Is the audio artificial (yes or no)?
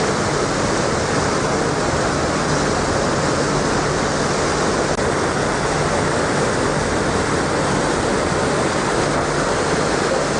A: no